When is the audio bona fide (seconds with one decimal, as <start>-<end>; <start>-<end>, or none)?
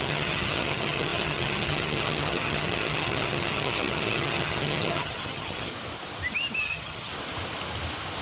5.7-6.6; 7.1-8.2